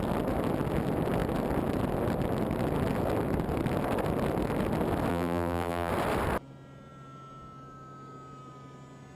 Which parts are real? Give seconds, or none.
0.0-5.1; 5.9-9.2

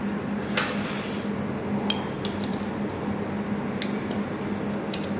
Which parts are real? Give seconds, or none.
0.0-5.2

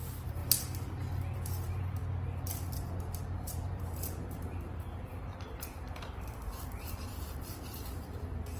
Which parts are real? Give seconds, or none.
0.4-1.6; 2.0-3.2